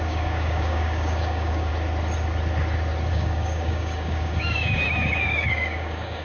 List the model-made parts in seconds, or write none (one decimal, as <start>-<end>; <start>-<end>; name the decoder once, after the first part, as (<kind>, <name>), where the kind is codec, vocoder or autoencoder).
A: 0.0-1.7 (codec, DAC); 3.1-6.2